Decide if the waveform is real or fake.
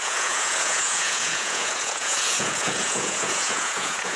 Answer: fake